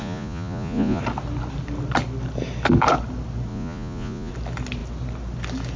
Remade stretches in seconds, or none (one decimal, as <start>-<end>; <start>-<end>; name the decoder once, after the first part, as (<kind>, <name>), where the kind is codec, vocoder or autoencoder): 0.0-1.0 (vocoder, Vocos); 3.5-4.3

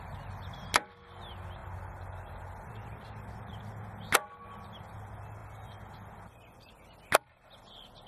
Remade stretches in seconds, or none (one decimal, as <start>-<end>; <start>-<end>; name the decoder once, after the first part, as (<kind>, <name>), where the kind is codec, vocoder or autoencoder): none

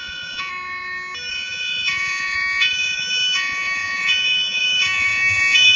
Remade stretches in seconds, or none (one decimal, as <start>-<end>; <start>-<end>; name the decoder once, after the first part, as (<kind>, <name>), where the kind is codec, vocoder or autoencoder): 0.0-0.5 (vocoder, Vocos); 1.3-5.8